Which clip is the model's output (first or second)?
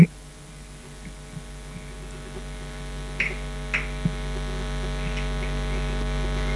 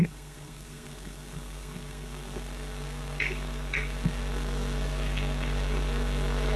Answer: second